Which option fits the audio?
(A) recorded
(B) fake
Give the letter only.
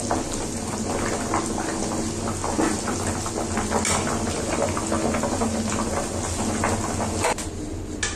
A